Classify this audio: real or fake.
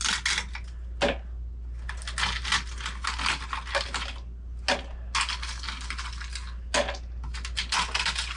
real